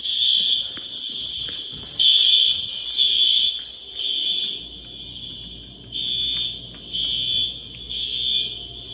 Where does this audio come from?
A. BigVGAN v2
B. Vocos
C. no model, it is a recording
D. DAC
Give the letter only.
C